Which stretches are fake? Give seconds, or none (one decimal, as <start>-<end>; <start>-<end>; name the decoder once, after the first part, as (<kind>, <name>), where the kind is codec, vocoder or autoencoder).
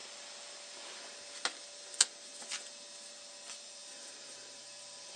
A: 3.8-5.2 (vocoder, BigVGAN v2)